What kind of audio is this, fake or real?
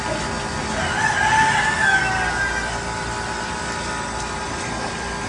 real